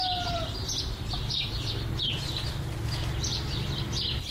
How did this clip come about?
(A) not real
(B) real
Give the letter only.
B